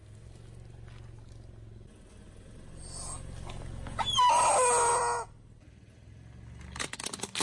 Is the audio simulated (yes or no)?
no